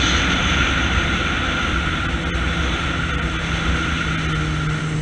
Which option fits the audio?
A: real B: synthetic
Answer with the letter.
A